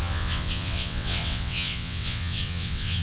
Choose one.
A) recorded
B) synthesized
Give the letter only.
B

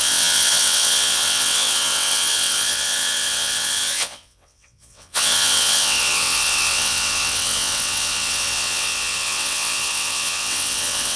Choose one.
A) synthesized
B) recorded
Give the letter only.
A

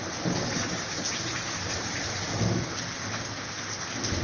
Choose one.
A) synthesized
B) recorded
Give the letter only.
B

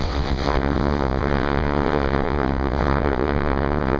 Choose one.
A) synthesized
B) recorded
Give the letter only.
A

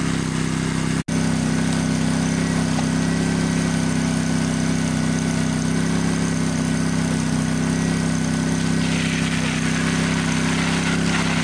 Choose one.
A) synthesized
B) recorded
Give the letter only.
B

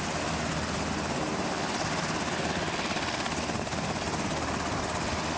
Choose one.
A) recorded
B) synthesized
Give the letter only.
A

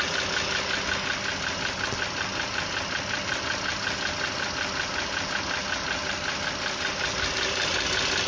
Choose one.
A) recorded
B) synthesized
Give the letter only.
A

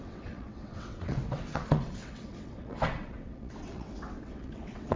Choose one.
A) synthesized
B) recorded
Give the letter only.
A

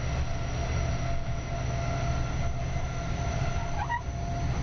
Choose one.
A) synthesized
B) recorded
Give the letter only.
B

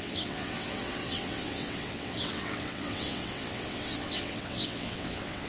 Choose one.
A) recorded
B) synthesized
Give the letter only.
B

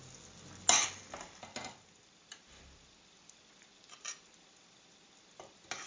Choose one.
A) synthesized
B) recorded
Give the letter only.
B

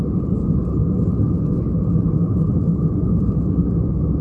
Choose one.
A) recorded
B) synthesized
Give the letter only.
A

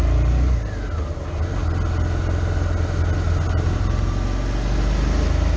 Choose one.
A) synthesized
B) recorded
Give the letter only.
B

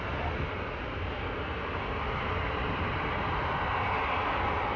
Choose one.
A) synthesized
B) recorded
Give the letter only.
B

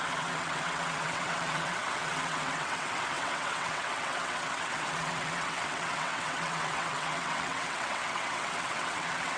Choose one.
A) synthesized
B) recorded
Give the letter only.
A